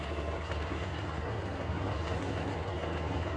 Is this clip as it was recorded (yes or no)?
no